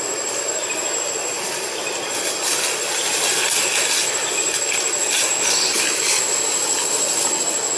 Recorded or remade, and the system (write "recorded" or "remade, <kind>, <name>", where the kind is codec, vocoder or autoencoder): recorded